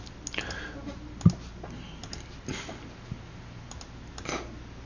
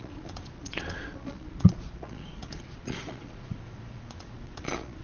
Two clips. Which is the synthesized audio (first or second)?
second